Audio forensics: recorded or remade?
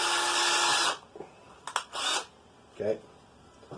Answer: recorded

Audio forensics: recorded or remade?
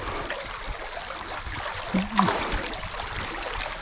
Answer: recorded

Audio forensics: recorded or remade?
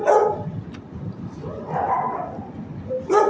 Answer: recorded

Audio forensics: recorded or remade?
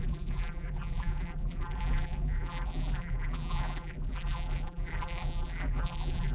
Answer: remade